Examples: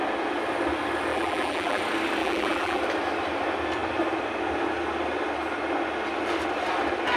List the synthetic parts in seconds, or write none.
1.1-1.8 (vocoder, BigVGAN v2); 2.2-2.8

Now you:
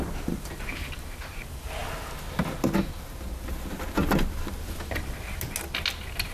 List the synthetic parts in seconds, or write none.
none